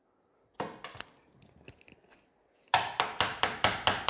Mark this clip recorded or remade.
recorded